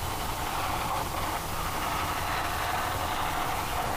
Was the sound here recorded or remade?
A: recorded